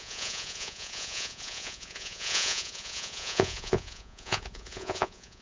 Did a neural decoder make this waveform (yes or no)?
yes